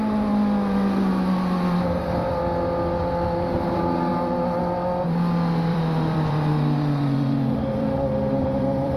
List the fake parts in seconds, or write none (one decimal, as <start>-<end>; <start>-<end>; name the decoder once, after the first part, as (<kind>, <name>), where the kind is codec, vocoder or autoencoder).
5.7-9.0 (vocoder, BigVGAN v2)